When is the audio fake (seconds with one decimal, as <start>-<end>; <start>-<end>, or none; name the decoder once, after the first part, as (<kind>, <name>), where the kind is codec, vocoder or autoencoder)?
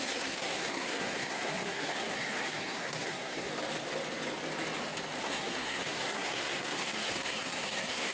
0.0-3.5 (codec, SNAC); 5.2-8.1